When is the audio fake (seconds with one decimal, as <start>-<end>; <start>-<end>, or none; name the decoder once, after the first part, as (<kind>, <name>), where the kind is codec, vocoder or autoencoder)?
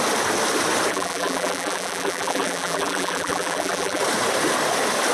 0.9-4.0 (vocoder, BigVGAN v2)